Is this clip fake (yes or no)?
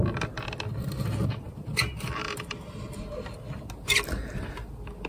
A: no